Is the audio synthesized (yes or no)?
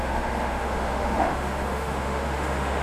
yes